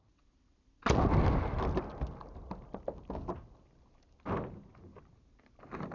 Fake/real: real